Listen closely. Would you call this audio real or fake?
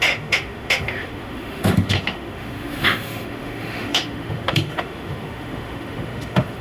fake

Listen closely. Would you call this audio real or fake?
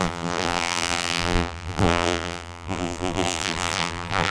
fake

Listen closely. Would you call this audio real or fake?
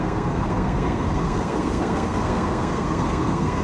fake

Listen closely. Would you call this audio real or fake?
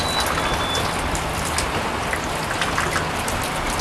real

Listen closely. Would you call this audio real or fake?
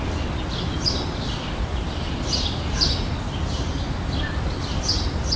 real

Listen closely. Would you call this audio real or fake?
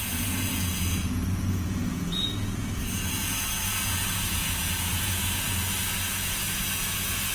fake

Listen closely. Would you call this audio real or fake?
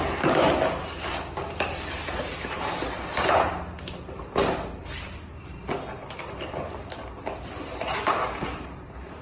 real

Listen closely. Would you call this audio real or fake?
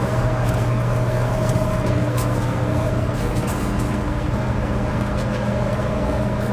fake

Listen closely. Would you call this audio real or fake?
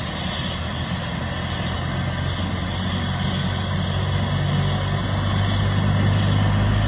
real